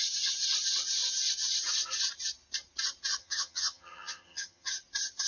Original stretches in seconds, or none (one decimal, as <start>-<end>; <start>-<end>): 0.0-3.2; 4.7-5.3